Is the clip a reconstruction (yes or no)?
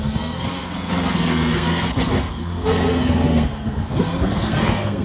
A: yes